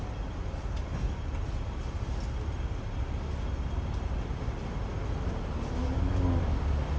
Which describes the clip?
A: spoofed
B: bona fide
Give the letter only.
B